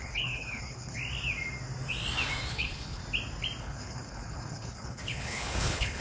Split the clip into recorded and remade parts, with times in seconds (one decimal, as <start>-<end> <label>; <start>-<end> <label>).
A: 0.0-1.0 remade; 1.0-2.5 recorded; 2.5-3.0 remade; 3.0-3.6 recorded; 3.6-6.0 remade